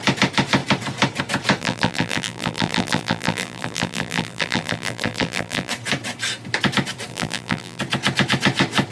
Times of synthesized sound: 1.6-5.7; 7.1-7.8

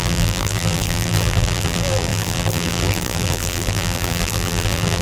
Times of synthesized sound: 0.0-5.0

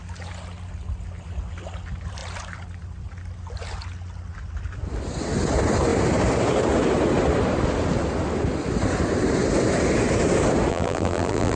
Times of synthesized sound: 10.7-11.6